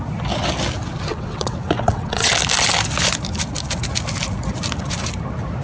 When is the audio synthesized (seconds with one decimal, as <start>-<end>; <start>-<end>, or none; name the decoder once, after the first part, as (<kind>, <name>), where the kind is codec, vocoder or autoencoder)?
1.1-2.3 (vocoder, WaveNeXt)